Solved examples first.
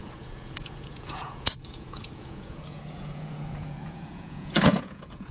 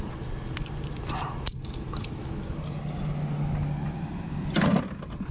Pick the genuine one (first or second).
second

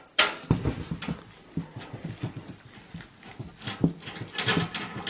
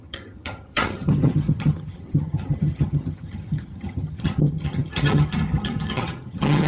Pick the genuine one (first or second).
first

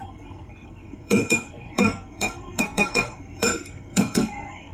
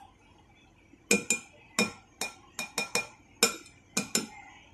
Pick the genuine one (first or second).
second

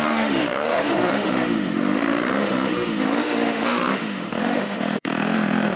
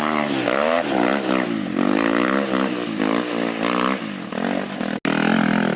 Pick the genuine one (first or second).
second